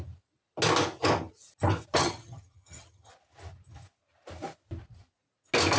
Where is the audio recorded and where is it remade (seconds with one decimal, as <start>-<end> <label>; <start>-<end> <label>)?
0.0-2.0 recorded; 2.0-3.1 remade; 3.1-5.8 recorded